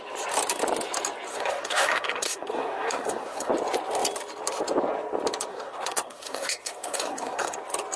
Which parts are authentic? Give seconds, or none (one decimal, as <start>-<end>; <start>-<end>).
0.0-1.3; 3.5-5.5; 7.6-8.0